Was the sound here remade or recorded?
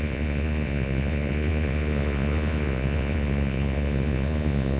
remade